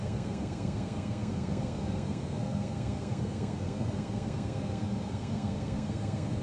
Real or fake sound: fake